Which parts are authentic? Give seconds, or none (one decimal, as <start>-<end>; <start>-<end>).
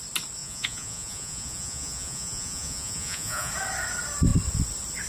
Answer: 0.0-0.4; 3.5-5.1